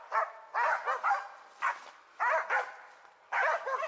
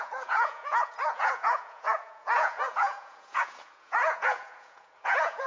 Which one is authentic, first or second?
first